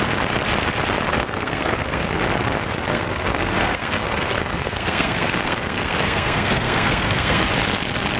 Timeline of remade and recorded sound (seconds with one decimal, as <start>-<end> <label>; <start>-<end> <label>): 0.0-1.1 recorded; 1.1-2.2 remade; 2.2-2.9 recorded; 2.9-7.5 remade; 7.5-8.2 recorded